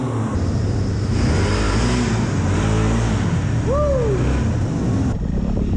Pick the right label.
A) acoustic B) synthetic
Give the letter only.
A